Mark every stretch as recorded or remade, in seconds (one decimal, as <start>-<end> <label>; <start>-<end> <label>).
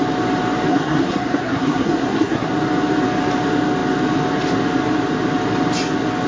0.0-0.7 recorded; 0.7-2.5 remade; 2.5-6.3 recorded